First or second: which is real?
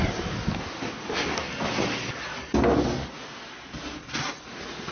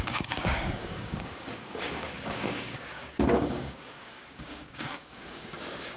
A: first